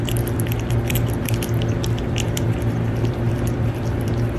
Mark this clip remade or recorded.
remade